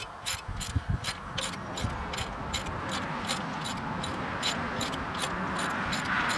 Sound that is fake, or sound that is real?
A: real